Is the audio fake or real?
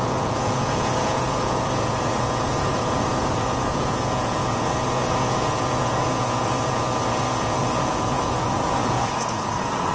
fake